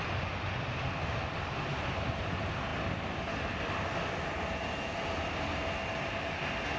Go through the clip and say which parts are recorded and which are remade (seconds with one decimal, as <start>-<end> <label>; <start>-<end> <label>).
0.0-6.8 recorded